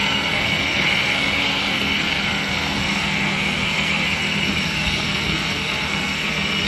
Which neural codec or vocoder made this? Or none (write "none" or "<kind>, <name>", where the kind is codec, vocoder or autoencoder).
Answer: codec, SNAC